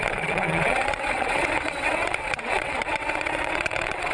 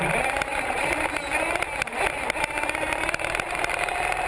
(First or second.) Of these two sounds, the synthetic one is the first